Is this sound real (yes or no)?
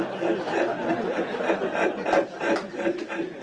yes